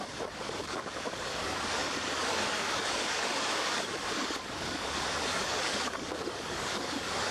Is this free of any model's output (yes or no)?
no